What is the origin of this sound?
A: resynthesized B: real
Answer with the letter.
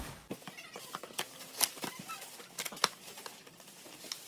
B